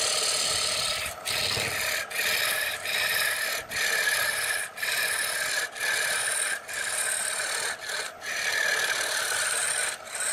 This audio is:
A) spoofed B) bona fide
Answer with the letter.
B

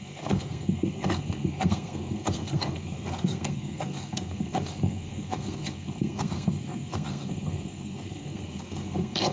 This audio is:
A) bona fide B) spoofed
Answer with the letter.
B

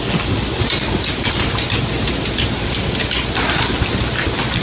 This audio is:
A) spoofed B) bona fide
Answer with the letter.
B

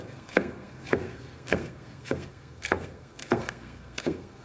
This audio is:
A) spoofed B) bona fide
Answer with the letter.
A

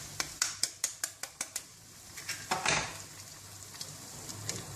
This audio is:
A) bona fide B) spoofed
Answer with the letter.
A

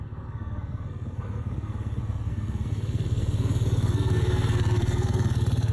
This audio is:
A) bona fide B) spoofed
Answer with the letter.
B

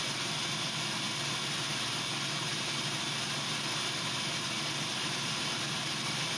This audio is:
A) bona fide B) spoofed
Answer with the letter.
A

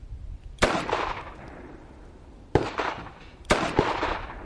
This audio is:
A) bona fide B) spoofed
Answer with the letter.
A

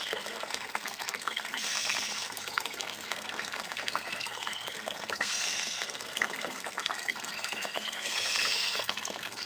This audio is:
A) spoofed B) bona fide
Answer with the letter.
A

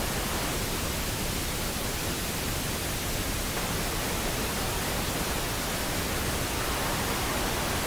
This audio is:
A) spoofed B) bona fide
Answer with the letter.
B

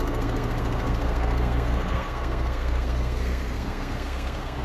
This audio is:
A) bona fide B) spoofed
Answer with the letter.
B